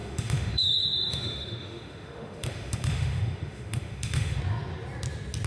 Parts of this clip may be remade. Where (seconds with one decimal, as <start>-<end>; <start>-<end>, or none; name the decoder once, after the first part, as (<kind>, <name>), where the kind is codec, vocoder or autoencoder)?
0.0-0.7 (autoencoder, DAC-VAE); 1.1-4.4